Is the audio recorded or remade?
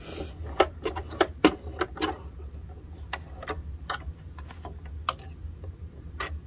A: recorded